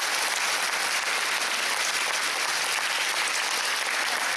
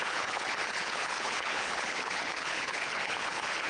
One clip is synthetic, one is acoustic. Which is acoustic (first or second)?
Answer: first